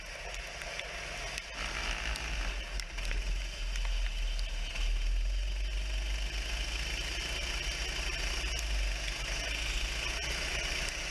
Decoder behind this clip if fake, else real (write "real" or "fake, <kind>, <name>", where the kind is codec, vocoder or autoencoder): real